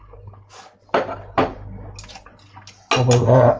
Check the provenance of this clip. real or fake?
real